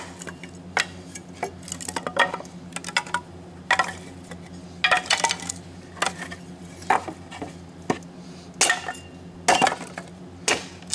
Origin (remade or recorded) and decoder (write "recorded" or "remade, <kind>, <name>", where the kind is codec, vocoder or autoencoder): recorded